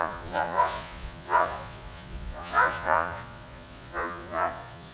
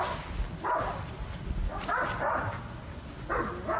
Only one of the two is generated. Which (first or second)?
first